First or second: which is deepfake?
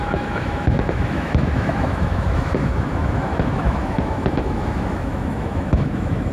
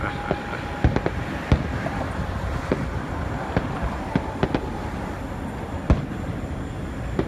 first